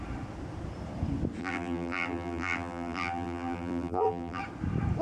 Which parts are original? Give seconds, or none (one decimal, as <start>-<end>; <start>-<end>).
0.0-1.4; 4.4-5.0